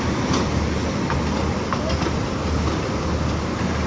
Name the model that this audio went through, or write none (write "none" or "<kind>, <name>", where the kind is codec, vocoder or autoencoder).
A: none